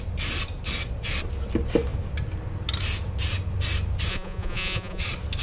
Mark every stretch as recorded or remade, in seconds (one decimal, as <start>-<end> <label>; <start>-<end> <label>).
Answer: 0.0-4.1 recorded; 4.1-5.0 remade; 5.0-5.4 recorded